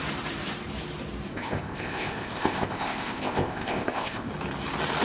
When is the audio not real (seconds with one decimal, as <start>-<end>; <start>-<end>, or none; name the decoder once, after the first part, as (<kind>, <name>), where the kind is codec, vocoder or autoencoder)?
1.3-4.3 (codec, ZipCodec)